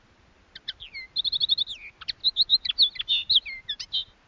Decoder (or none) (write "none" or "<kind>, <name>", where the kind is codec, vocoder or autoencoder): none